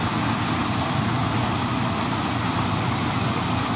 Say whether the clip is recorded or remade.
remade